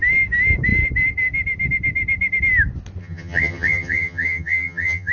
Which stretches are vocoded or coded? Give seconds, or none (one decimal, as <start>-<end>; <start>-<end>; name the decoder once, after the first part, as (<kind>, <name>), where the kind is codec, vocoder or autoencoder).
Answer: 3.0-5.1 (vocoder, HiFi-GAN)